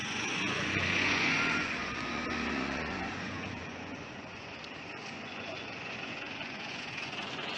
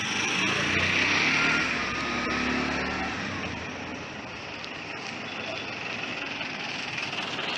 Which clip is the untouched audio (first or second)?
second